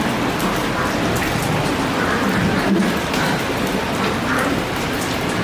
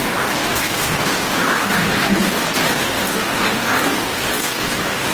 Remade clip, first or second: second